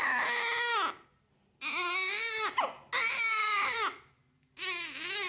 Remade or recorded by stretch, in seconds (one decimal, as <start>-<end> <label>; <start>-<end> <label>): 0.0-5.3 recorded